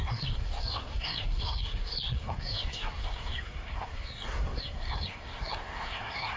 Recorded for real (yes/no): no